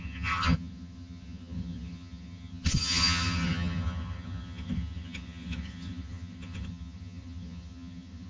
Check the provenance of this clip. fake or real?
fake